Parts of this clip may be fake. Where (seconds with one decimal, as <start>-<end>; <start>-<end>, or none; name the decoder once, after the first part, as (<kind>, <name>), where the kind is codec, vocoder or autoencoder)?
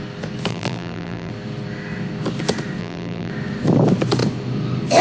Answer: 0.5-1.3 (vocoder, BigVGAN v2); 2.8-3.3